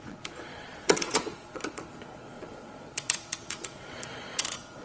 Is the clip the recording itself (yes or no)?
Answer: no